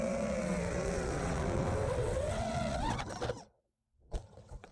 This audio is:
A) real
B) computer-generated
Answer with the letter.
B